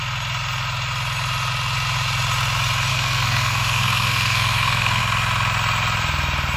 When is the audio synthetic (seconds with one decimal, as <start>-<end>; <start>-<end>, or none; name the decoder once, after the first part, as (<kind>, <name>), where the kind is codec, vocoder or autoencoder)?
2.9-5.0 (codec, SNAC)

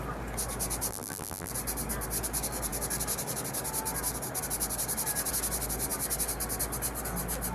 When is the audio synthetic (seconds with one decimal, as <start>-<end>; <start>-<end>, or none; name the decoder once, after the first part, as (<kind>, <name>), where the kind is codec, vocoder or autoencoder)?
0.9-1.5 (vocoder, BigVGAN v2)

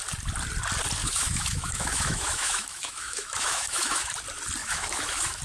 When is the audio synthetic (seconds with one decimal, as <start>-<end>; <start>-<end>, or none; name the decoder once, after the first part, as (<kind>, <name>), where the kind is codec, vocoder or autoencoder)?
1.0-4.1 (autoencoder, DAC-VAE); 4.6-5.4

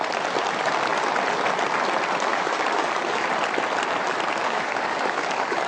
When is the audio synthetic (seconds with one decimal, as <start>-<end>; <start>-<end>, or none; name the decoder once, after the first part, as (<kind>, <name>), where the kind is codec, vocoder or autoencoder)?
2.3-3.3 (codec, DAC); 4.4-5.7